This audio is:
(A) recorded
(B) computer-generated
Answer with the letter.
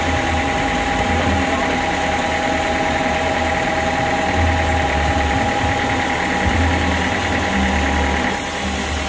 A